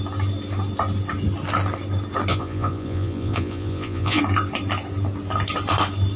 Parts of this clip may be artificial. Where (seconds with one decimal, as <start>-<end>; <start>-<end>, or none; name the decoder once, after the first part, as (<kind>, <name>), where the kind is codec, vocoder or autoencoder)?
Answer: 2.3-4.2 (vocoder, Vocos)